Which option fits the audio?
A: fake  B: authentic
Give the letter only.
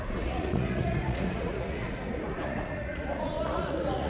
A